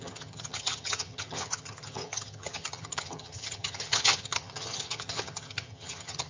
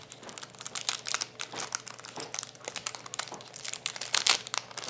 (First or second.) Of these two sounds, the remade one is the first